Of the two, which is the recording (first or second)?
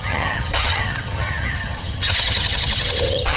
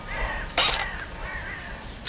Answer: second